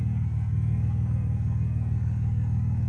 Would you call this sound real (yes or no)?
no